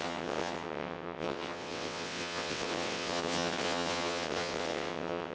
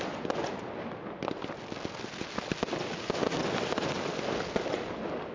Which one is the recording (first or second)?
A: second